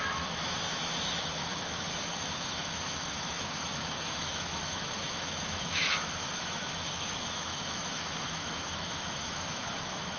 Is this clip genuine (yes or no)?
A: no